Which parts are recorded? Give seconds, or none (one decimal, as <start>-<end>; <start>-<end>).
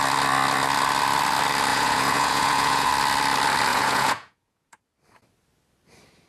0.0-1.7; 2.9-3.7; 4.8-6.3